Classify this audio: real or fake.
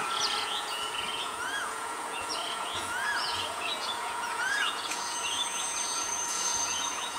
fake